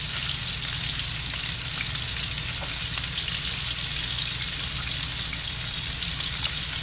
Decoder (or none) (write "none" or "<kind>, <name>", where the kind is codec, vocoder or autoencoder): none